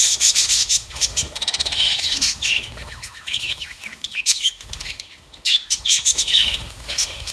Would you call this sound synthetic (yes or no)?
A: yes